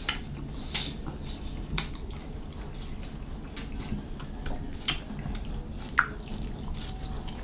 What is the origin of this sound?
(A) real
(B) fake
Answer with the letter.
A